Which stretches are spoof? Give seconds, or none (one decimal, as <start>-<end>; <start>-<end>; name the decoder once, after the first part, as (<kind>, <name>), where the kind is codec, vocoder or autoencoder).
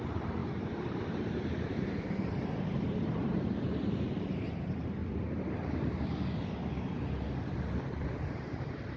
0.0-5.0 (vocoder, BigVGAN v2); 7.9-9.0